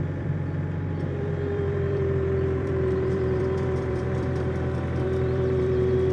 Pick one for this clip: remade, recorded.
remade